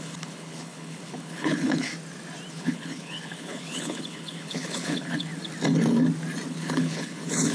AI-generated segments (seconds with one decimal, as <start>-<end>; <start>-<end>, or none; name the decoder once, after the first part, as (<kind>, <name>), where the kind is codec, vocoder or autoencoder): 0.0-1.9 (codec, HILCodec); 2.5-5.3; 6.5-7.5